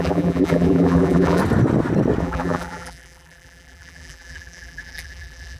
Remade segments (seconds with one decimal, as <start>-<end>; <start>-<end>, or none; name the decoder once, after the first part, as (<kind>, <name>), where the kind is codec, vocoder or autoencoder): 0.0-1.4 (vocoder, BigVGAN v2); 2.2-5.6